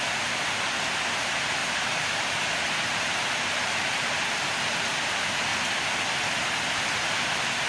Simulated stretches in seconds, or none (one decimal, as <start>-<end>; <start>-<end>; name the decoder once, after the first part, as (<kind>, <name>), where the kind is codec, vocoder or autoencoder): 1.6-4.2 (vocoder, BigVGAN v2); 5.5-6.0